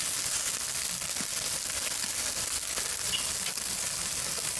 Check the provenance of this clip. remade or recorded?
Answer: recorded